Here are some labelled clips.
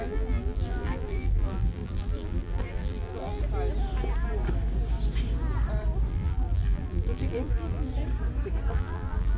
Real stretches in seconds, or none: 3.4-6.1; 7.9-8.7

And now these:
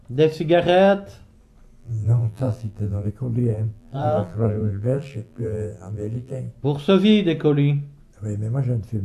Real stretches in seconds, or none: 0.0-1.8; 3.1-3.5; 6.4-9.0

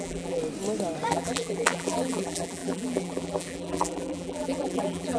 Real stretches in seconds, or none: 0.4-1.1

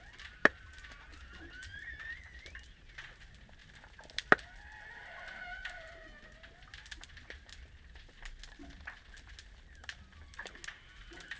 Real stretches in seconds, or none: 0.0-0.4; 1.4-3.6; 5.9-9.0; 10.5-11.4